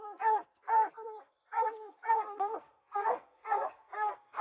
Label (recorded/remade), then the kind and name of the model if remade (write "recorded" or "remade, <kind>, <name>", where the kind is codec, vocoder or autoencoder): remade, codec, SNAC